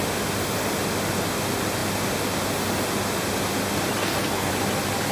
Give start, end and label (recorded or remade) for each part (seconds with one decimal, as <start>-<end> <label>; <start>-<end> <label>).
0.0-4.0 recorded; 4.0-4.5 remade; 4.5-5.1 recorded